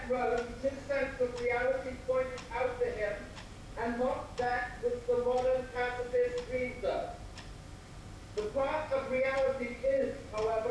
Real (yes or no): yes